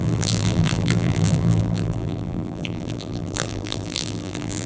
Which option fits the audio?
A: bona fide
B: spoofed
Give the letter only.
B